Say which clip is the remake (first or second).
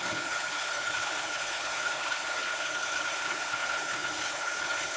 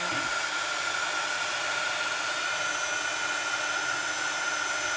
first